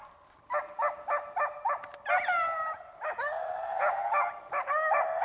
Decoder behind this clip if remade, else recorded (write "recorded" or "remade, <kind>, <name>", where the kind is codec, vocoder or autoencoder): recorded